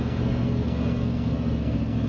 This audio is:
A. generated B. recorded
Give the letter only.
A